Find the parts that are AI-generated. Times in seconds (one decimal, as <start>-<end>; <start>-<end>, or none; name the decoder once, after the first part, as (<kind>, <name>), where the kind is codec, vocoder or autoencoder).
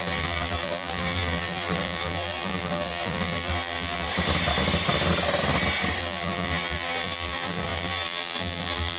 0.0-4.1 (vocoder, BigVGAN v2); 6.0-9.0